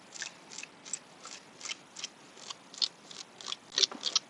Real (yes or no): yes